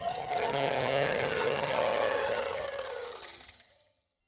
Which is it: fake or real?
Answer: fake